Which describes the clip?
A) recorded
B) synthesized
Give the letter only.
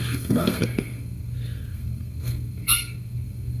B